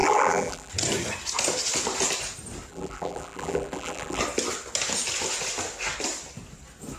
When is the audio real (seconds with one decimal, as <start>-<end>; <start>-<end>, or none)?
0.7-2.7; 4.2-7.0